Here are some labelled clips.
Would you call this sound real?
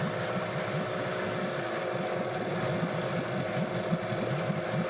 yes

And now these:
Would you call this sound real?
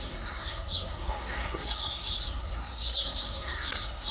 no